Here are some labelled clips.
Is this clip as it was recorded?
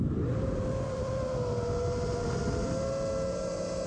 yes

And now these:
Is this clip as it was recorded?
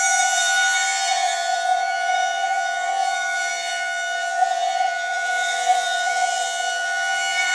no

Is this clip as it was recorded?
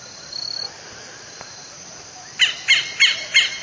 yes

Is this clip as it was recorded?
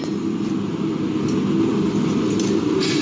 yes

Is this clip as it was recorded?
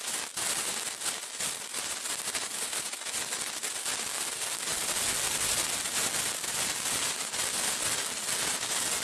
yes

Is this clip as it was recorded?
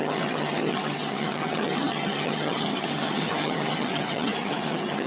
no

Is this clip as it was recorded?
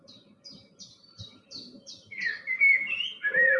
no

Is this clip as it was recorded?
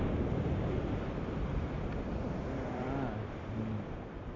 yes